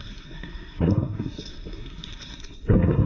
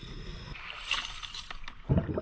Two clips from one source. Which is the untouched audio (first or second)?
second